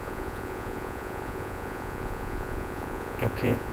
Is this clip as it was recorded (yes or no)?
no